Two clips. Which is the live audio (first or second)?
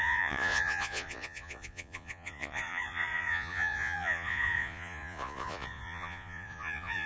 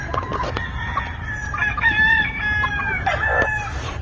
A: second